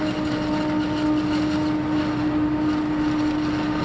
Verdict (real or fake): real